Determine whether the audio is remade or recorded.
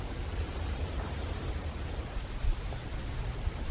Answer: recorded